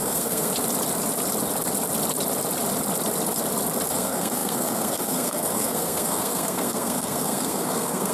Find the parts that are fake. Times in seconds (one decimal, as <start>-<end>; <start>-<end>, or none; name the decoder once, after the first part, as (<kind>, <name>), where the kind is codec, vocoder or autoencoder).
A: 0.0-0.5 (codec, SNAC); 3.9-8.1